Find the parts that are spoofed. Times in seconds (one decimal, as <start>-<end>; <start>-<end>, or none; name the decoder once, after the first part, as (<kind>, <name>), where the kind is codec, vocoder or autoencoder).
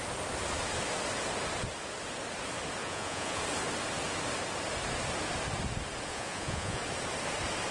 2.8-3.4 (vocoder, Vocos); 6.1-6.8